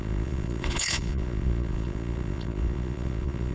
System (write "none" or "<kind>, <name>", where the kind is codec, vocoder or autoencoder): vocoder, Vocos